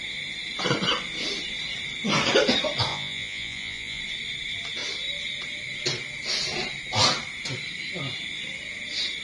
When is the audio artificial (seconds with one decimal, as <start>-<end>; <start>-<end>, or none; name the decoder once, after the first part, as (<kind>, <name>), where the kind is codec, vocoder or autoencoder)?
2.9-4.0 (vocoder, Vocos)